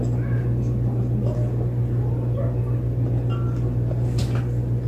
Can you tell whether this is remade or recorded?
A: recorded